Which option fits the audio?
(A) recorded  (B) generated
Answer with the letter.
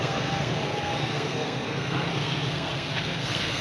B